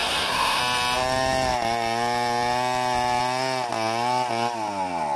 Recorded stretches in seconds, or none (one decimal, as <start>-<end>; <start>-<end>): 0.6-5.2